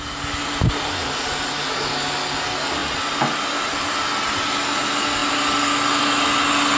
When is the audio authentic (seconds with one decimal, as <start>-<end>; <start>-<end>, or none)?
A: 0.0-6.8